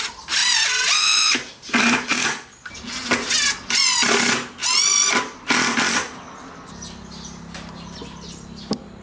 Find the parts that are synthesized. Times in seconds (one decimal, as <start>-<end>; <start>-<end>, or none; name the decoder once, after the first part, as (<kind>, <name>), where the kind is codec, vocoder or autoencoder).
0.4-1.1 (vocoder, BigVGAN v2)